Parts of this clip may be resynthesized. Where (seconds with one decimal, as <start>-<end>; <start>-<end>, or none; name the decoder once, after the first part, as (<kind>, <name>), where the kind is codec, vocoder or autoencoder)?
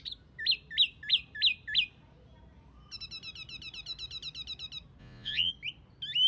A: 5.0-5.5 (vocoder, Vocos)